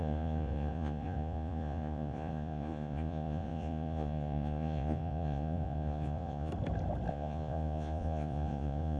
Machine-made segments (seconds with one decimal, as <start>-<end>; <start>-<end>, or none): 0.0-6.5; 7.1-9.0